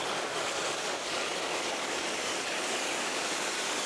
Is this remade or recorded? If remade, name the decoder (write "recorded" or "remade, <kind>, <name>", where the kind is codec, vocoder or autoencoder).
remade, codec, DAC